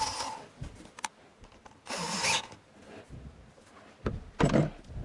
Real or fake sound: real